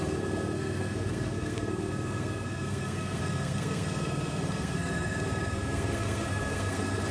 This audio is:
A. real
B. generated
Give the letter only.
B